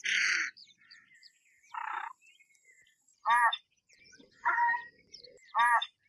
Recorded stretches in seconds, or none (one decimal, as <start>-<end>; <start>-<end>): none